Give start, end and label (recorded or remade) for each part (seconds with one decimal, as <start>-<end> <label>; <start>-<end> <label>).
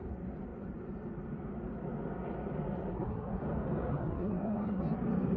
0.0-2.9 recorded; 2.9-3.4 remade; 3.4-3.9 recorded; 3.9-4.8 remade; 4.8-5.4 recorded